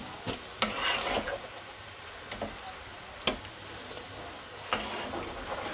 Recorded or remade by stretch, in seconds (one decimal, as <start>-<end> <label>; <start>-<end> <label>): 0.0-3.4 remade; 3.4-5.7 recorded